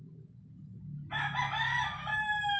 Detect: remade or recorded recorded